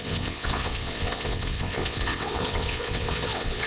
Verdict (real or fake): fake